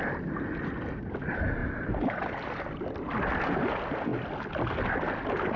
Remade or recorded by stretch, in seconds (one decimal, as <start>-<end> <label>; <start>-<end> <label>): 0.0-5.6 recorded

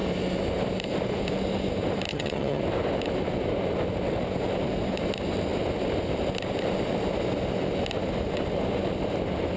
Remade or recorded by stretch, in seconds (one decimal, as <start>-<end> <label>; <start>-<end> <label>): 0.0-2.1 recorded; 2.1-2.6 remade; 2.6-9.6 recorded

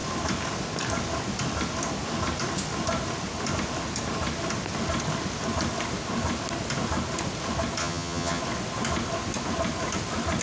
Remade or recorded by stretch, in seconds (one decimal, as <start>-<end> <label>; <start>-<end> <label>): 0.0-7.8 recorded; 7.8-8.4 remade; 8.4-10.4 recorded

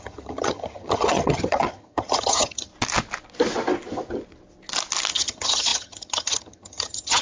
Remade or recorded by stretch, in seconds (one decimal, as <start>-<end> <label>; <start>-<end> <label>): 0.0-2.7 remade; 2.7-5.1 recorded; 5.1-7.2 remade

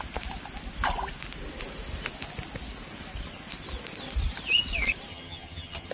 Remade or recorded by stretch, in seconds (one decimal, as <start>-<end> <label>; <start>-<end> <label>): 0.0-5.1 recorded; 5.1-5.9 remade

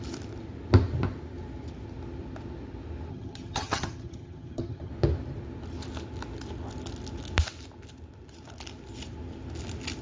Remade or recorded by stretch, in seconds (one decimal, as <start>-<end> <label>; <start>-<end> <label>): 0.0-3.1 recorded; 3.1-4.9 remade; 4.9-10.0 recorded